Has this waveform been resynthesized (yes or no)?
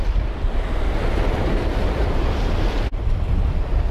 no